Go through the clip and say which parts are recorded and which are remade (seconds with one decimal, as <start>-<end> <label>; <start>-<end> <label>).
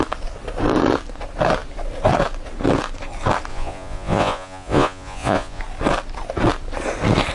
0.0-3.5 recorded; 3.5-5.6 remade; 5.6-7.3 recorded